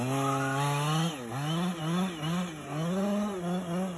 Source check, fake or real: real